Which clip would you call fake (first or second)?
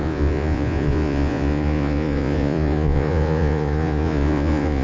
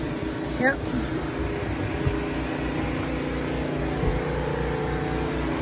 first